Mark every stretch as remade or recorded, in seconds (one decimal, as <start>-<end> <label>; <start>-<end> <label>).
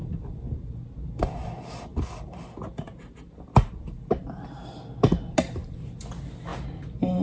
0.0-0.8 remade; 0.8-1.9 recorded; 1.9-4.4 remade; 4.4-7.2 recorded